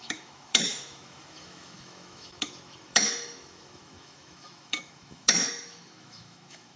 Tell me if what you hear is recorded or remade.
remade